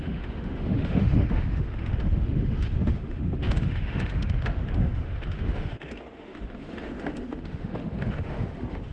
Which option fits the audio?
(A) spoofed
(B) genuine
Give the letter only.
A